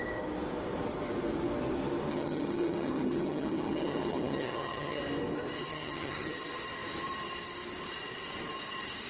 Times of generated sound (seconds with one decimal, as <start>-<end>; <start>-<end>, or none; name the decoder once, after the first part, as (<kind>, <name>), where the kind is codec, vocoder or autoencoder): 2.1-5.0 (vocoder, HiFi-GAN); 5.7-6.3